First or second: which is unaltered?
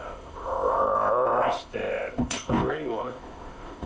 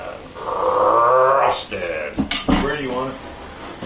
second